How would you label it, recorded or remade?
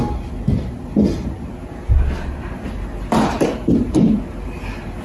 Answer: recorded